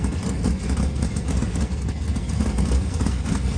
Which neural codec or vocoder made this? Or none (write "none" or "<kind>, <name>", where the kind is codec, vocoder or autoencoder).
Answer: codec, SNAC